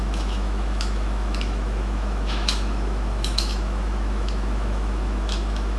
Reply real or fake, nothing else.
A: fake